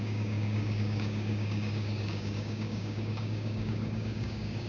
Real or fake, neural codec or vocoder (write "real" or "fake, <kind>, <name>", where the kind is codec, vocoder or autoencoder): fake, codec, DAC